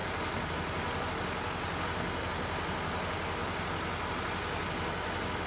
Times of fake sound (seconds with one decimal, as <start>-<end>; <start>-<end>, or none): none